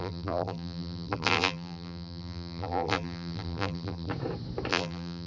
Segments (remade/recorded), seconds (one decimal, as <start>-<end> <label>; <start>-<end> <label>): 0.0-4.1 remade; 4.1-4.7 recorded; 4.7-5.3 remade